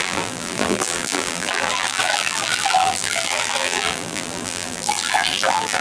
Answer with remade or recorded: remade